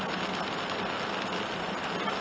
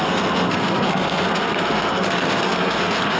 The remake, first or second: second